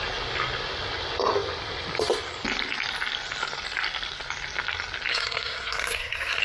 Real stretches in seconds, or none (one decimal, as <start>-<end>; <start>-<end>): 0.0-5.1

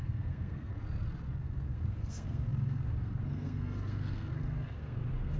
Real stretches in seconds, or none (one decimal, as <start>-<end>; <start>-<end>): 0.7-1.4

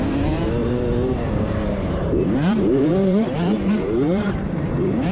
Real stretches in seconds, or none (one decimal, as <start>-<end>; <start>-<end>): none

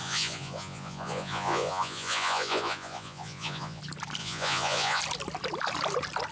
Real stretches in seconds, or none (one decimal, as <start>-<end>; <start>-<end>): 3.8-4.2; 5.0-6.3

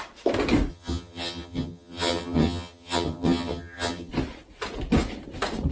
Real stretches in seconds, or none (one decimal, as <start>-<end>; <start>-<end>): 0.0-0.7; 4.1-5.7

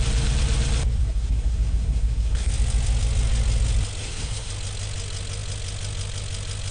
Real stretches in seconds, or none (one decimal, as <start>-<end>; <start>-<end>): 0.0-1.0; 2.5-4.0; 4.5-6.7